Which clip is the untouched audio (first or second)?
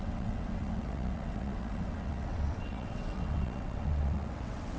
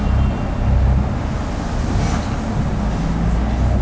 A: second